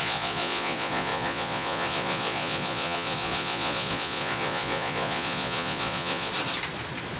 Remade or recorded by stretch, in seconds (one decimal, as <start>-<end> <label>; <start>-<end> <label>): 0.0-6.3 remade; 6.3-7.2 recorded